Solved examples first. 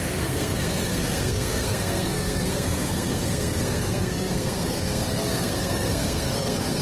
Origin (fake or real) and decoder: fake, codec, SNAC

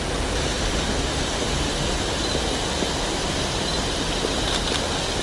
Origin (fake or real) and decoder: real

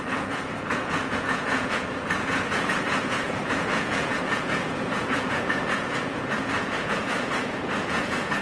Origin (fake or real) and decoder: fake, vocoder, Vocos